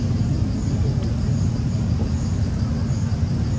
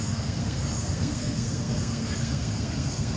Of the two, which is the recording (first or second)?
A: first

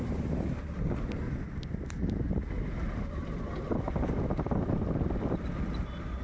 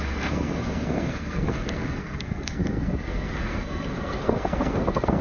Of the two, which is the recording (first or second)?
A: first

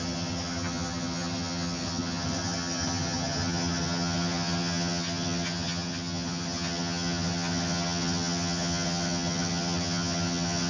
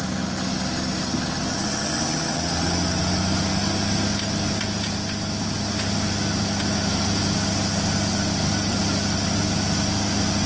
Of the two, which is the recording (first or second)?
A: second